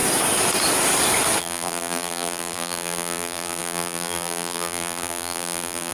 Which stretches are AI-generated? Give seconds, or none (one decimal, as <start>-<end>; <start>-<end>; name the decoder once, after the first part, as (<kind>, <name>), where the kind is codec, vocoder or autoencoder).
1.4-5.9 (vocoder, BigVGAN v2)